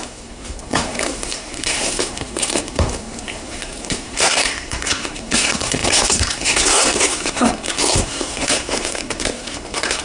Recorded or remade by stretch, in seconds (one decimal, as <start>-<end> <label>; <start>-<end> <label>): 0.0-10.0 remade

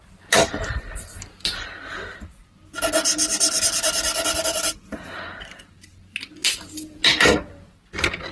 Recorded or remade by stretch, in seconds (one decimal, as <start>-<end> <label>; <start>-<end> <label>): 0.0-8.3 recorded

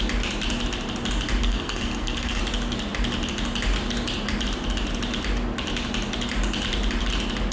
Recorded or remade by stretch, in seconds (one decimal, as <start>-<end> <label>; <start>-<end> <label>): 0.0-1.4 recorded; 1.4-2.4 remade; 2.4-7.5 recorded

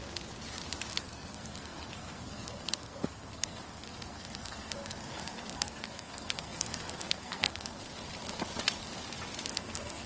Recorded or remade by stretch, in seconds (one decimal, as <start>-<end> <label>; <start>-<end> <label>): 0.0-1.0 recorded; 1.0-7.8 remade; 7.8-9.5 recorded; 9.5-10.1 remade

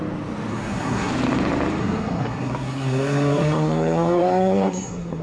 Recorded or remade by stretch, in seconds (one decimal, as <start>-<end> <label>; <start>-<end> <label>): 0.0-0.5 recorded; 0.5-1.1 remade; 1.1-1.8 recorded; 1.8-5.2 remade

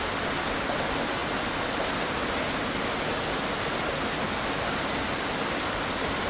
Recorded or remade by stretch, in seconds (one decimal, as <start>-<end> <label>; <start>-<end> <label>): 0.0-6.3 recorded

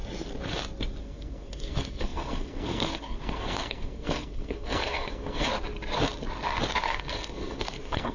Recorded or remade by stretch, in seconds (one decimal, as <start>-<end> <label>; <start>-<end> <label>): 0.0-1.0 recorded; 1.0-5.5 remade; 5.5-6.8 recorded; 6.8-8.1 remade

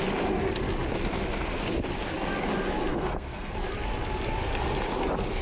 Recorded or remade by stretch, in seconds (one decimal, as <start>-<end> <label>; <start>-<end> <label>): 0.0-2.9 recorded; 2.9-3.5 remade; 3.5-5.4 recorded